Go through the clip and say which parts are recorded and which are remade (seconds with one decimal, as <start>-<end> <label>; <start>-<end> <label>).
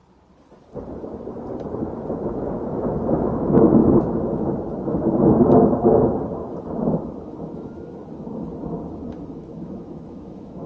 0.0-3.1 recorded; 3.1-3.8 remade; 3.8-7.2 recorded; 7.2-8.0 remade; 8.0-9.3 recorded; 9.3-10.7 remade